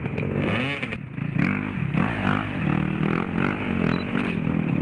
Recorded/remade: recorded